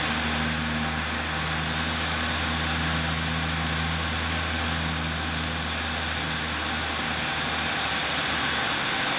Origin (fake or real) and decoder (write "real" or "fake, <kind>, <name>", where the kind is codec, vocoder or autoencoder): real